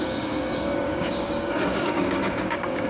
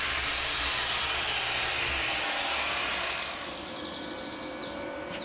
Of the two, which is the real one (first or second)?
second